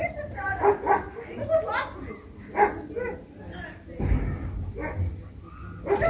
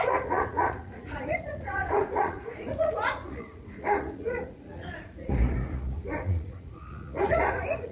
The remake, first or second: second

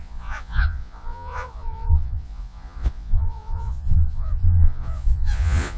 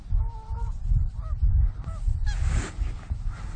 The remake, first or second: first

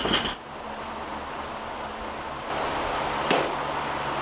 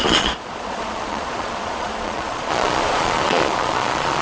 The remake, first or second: second